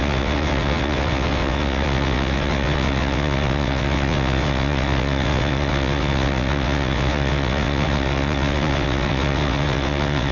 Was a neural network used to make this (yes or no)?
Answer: yes